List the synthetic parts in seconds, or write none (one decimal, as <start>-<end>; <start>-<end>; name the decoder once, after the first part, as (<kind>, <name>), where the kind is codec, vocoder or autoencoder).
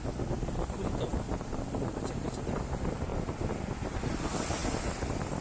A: 3.1-3.6 (vocoder, BigVGAN v2)